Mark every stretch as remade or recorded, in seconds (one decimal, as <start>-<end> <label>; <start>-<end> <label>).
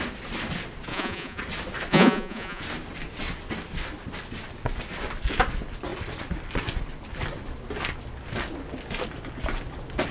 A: 0.0-0.9 recorded; 0.9-1.4 remade; 1.4-1.9 recorded; 1.9-2.6 remade; 2.6-10.1 recorded